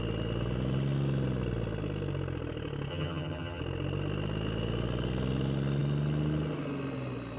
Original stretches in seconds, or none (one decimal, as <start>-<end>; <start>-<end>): 0.0-2.9; 3.6-7.4